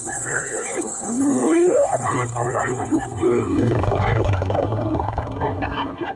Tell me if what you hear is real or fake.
fake